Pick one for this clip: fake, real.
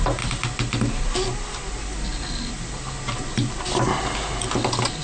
real